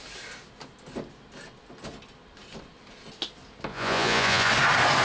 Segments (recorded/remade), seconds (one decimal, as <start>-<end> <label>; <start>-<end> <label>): 0.0-3.7 recorded; 3.7-4.5 remade; 4.5-5.0 recorded